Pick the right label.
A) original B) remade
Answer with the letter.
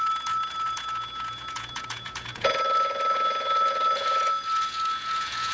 B